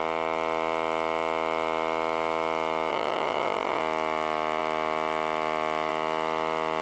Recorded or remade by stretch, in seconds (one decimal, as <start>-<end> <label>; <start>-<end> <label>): 0.0-2.9 recorded; 2.9-3.8 remade; 3.8-6.8 recorded